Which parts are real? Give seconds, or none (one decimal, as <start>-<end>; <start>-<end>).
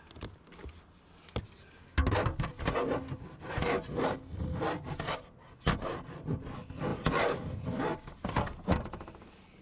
0.0-9.6